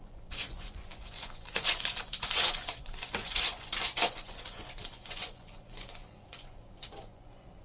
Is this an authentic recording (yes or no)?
no